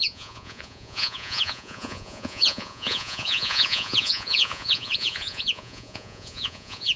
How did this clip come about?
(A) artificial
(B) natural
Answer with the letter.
A